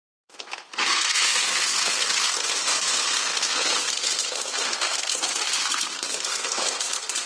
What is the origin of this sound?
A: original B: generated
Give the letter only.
B